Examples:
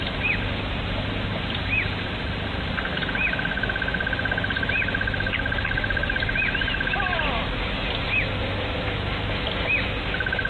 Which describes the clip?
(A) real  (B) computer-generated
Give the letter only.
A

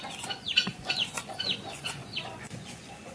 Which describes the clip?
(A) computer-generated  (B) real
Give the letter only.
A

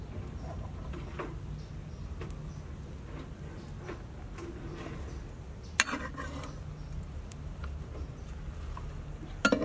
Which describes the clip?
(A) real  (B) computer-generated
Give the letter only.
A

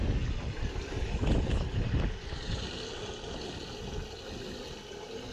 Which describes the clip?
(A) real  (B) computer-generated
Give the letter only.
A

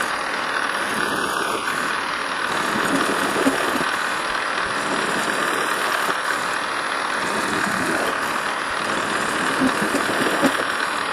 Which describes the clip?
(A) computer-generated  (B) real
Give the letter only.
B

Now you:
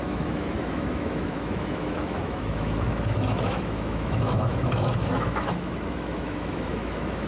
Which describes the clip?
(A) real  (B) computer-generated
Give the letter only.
B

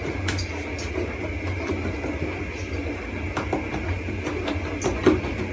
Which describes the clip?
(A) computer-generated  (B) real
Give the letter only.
B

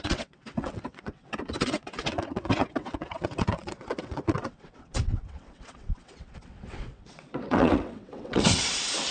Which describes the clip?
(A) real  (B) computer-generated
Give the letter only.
B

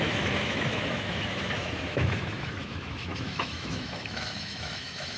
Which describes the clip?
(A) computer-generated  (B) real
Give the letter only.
A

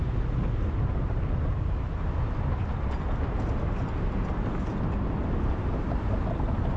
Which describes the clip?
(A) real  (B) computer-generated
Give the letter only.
A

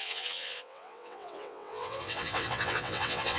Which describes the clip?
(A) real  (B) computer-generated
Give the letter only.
B